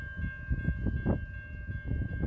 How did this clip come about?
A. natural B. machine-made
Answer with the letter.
A